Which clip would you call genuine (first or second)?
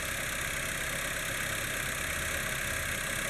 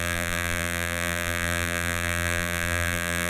first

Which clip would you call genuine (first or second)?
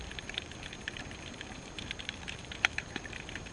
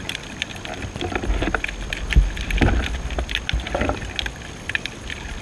second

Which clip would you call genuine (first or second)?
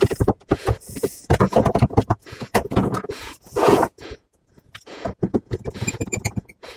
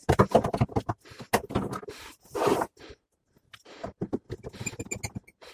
second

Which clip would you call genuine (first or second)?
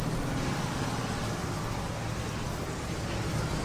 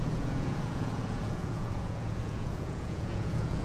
first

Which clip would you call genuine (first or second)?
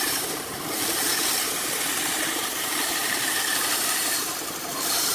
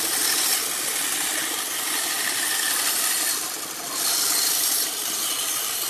second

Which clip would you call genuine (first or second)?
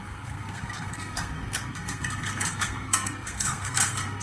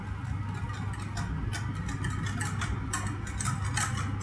second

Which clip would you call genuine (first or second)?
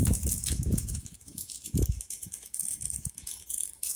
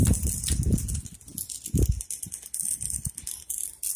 second